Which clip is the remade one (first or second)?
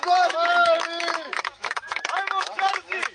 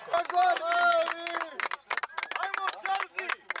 first